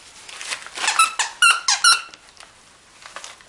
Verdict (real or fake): real